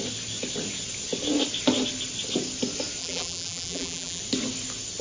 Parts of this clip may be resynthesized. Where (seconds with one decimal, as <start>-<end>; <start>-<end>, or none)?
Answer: 3.0-4.2